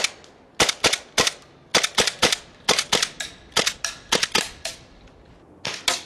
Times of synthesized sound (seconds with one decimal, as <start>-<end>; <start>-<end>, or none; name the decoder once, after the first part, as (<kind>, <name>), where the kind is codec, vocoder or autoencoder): none